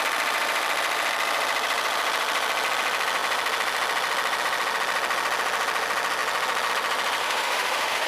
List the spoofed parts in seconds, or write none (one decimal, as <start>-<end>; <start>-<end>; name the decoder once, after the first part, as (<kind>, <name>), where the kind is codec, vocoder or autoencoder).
7.2-8.1 (autoencoder, DAC-VAE)